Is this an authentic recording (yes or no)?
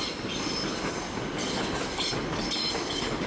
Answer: yes